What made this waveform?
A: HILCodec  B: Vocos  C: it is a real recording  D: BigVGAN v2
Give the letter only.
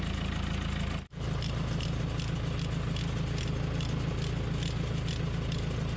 C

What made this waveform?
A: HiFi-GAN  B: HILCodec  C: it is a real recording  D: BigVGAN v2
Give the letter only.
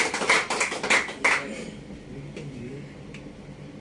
C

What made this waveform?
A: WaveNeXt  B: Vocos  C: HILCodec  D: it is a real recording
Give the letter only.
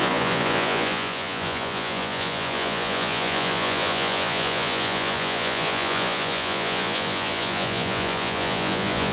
B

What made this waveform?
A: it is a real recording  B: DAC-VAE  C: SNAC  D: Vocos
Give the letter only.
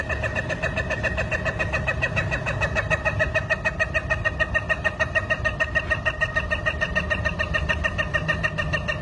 A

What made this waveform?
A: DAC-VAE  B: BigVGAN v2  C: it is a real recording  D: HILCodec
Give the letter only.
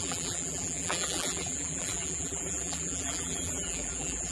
B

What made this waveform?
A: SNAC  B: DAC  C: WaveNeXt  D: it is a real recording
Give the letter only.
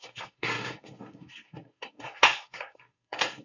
A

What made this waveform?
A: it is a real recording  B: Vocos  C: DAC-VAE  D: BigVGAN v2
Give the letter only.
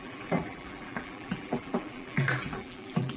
D